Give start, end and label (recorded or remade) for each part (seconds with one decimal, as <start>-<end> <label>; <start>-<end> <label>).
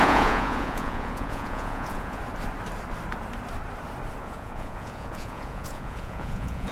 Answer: 0.0-2.2 remade; 2.2-4.2 recorded; 4.2-6.7 remade